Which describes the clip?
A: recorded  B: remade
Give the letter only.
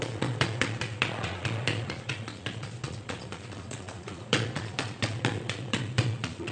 B